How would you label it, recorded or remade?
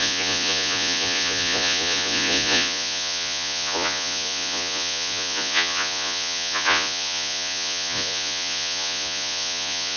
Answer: remade